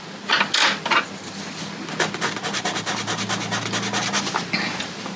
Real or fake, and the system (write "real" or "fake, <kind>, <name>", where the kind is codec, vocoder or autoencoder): real